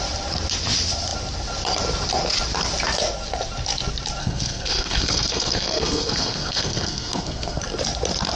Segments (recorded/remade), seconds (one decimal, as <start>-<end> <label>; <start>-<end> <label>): 0.0-4.2 recorded; 4.2-7.6 remade; 7.6-8.4 recorded